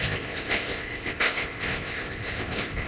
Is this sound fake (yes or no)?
yes